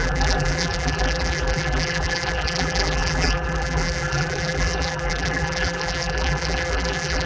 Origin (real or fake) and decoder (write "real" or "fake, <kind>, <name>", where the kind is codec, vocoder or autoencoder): fake, vocoder, BigVGAN v2